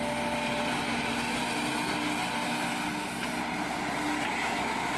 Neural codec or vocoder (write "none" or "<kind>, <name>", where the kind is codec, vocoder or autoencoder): none